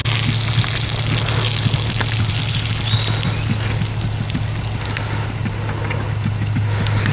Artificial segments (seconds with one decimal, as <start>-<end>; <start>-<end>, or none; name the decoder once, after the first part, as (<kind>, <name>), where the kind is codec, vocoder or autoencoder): none